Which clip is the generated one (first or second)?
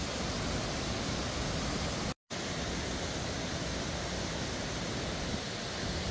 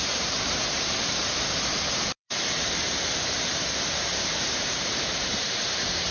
second